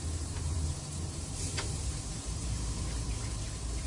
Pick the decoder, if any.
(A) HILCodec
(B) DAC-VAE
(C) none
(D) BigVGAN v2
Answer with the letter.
D